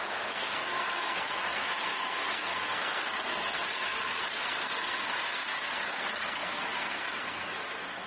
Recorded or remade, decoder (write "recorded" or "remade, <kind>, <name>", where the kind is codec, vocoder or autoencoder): remade, codec, SNAC